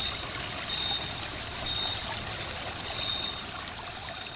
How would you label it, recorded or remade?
recorded